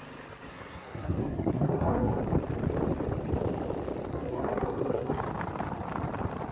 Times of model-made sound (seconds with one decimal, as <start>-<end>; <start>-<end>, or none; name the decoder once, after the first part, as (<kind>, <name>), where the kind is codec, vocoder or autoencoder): 0.5-2.2 (codec, SNAC); 4.1-5.2